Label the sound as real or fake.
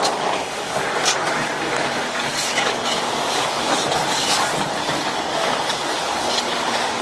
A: fake